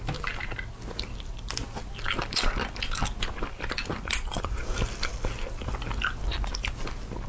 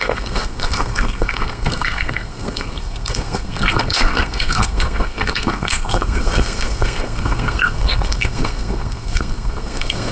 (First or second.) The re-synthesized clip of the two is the second